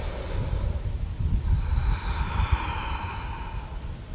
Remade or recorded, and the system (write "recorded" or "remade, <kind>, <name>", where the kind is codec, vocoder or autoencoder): recorded